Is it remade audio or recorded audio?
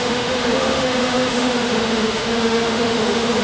remade